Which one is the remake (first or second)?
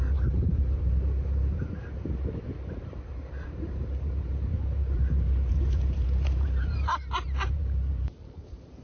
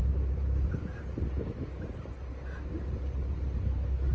first